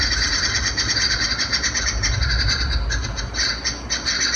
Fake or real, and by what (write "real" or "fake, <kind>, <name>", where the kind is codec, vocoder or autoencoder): real